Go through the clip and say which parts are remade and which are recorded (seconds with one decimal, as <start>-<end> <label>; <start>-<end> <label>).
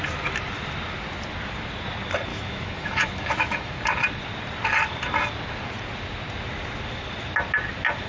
0.0-2.3 recorded; 2.3-3.7 remade; 3.7-8.1 recorded